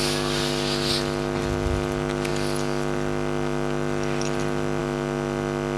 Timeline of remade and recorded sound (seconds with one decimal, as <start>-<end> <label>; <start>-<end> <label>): 0.0-5.8 recorded

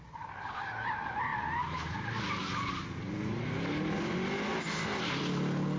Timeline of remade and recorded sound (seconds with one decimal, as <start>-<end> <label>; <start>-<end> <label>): 0.0-4.5 recorded; 4.5-5.2 remade; 5.2-5.8 recorded

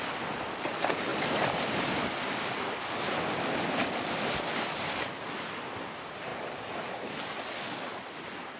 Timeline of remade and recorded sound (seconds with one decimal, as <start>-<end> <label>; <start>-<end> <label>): 0.0-6.3 remade; 6.3-8.6 recorded